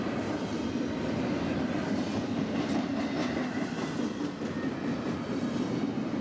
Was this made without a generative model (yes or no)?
yes